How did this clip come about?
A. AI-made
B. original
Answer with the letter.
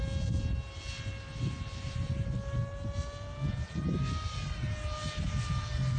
B